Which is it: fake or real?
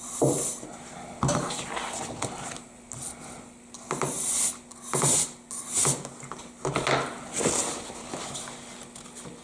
real